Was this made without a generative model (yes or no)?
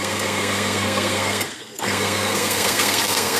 no